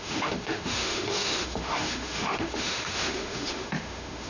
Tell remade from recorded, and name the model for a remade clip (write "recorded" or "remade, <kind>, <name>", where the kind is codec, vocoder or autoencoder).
remade, autoencoder, DAC-VAE